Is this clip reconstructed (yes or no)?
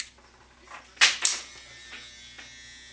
no